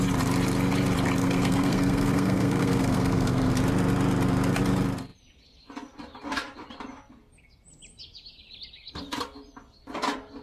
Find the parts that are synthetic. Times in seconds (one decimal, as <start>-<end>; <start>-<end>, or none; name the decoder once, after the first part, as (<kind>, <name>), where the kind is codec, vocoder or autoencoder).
1.2-3.5 (codec, SNAC)